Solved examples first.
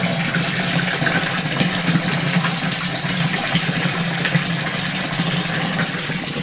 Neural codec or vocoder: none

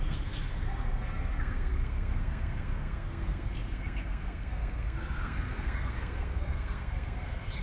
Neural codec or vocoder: codec, SNAC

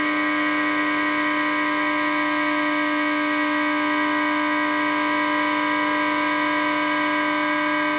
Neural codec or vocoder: none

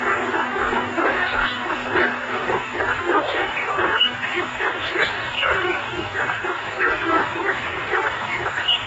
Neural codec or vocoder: codec, DAC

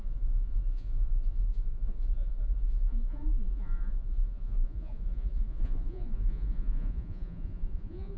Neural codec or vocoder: vocoder, Vocos